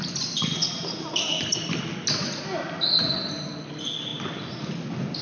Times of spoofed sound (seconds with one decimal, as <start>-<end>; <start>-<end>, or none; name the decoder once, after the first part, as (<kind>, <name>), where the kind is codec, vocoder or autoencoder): none